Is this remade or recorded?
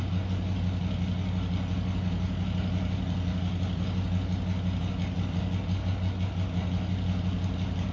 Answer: recorded